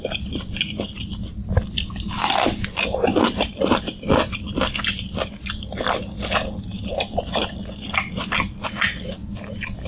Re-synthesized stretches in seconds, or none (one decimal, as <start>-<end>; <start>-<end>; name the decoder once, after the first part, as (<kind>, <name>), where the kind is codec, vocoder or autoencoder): 3.1-4.1 (vocoder, BigVGAN v2)